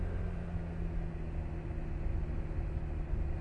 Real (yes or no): yes